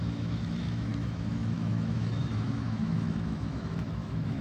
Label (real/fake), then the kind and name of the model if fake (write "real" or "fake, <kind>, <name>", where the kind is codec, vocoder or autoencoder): fake, autoencoder, DAC-VAE